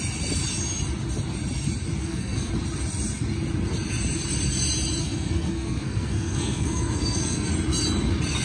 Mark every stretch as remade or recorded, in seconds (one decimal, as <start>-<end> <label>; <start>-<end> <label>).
0.0-2.0 recorded; 2.0-2.5 remade; 2.5-5.0 recorded; 5.0-7.5 remade; 7.5-8.4 recorded